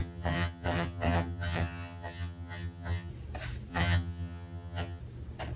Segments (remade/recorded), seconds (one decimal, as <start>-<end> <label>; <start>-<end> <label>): 0.0-3.1 remade; 3.1-3.7 recorded; 3.7-5.0 remade; 5.0-5.6 recorded